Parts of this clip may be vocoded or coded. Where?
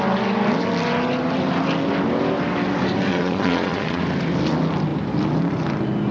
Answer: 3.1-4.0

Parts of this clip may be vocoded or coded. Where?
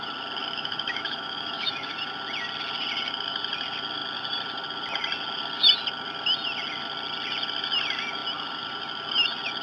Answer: 0.4-1.9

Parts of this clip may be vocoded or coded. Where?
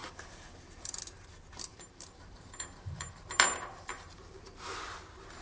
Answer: 0.0-1.0; 1.7-4.4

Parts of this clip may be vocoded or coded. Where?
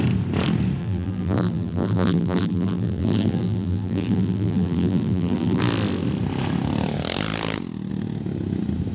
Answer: 0.8-5.6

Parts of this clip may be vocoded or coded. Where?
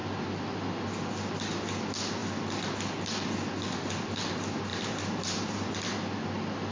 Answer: 4.7-5.7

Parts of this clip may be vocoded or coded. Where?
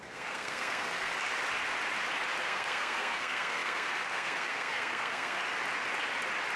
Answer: 0.0-1.1; 2.4-5.4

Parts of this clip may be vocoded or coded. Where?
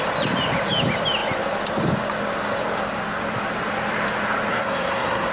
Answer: 4.5-5.3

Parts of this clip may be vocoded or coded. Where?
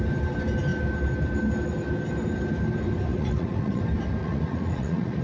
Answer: 3.1-3.8; 4.2-5.2